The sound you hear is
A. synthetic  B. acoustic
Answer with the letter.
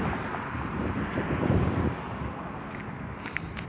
B